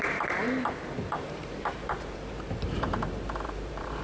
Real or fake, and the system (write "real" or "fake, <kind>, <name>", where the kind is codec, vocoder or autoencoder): fake, vocoder, BigVGAN v2